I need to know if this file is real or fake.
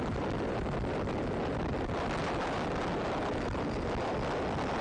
real